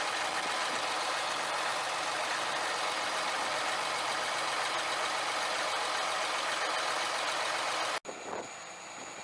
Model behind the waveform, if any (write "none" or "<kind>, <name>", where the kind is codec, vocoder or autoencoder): none